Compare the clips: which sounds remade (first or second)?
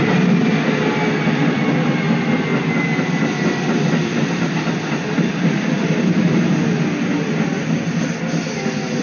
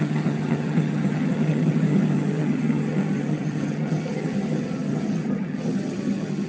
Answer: second